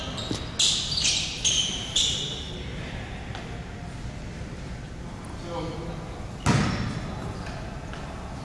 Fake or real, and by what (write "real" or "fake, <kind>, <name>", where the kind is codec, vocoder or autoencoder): real